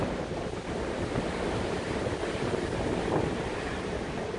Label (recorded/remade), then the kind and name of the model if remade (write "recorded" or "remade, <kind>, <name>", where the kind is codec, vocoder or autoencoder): recorded